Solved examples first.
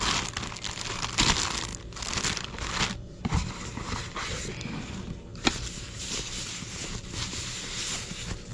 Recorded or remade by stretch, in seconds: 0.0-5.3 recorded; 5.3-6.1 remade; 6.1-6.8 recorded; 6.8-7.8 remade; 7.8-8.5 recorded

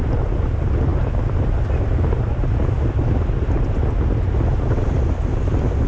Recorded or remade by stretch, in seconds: 0.0-5.9 recorded

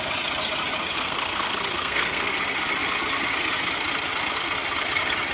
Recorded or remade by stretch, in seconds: 0.0-0.9 recorded; 0.9-2.3 remade; 2.3-5.3 recorded

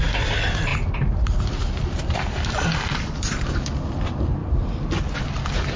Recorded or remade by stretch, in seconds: 0.0-5.8 recorded

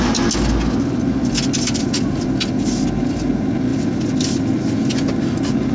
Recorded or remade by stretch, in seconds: 0.0-5.7 recorded

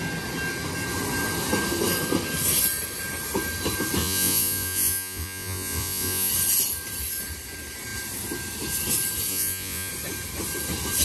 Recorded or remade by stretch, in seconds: 0.0-4.0 recorded; 4.0-6.3 remade; 6.3-9.3 recorded; 9.3-9.9 remade; 9.9-11.0 recorded

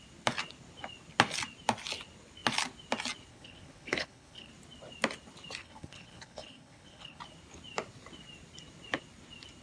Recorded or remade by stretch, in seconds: 0.0-3.3 recorded; 3.3-4.5 remade; 4.5-5.6 recorded; 5.6-7.2 remade; 7.2-9.6 recorded

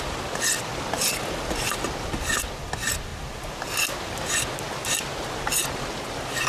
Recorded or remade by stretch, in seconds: 0.0-6.5 recorded